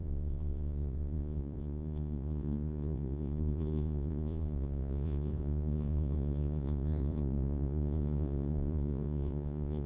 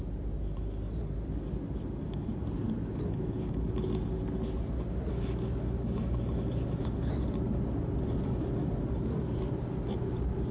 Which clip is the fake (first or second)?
first